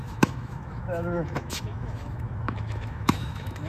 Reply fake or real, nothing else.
fake